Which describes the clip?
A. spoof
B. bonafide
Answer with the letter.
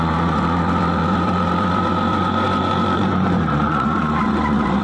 A